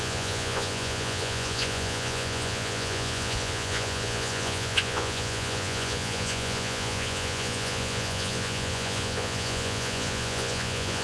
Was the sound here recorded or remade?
remade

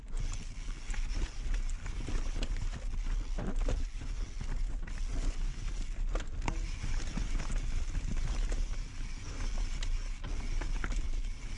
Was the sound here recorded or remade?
recorded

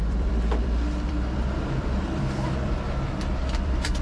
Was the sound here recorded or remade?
remade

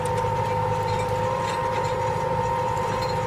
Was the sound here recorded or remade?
remade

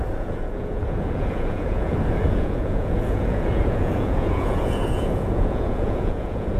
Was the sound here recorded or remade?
remade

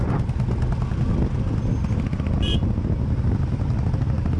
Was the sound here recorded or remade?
recorded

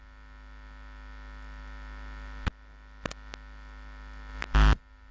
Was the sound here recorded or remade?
recorded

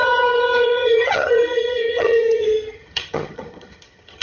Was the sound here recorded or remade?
remade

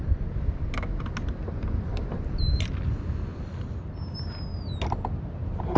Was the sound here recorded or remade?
recorded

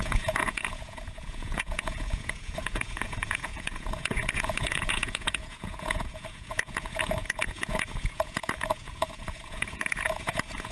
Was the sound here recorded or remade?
remade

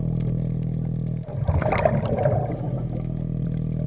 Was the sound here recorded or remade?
recorded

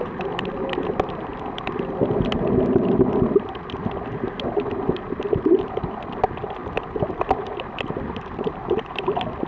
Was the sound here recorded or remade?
recorded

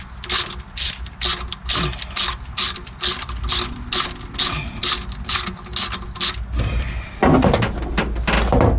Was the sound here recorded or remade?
recorded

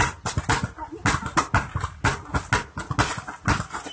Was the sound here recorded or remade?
recorded